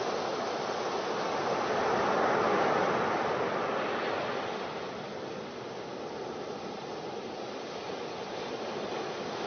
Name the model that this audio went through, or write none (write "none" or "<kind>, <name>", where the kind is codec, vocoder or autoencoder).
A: none